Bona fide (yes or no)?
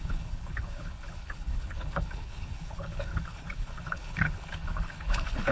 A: no